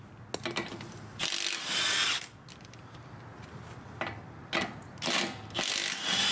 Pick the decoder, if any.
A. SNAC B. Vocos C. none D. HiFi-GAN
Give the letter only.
C